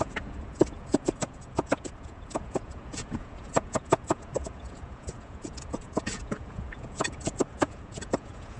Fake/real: fake